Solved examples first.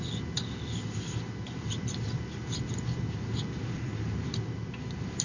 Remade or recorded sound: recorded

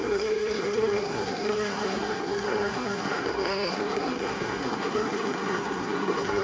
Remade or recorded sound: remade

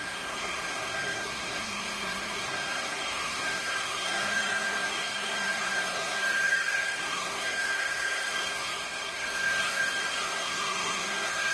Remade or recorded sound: remade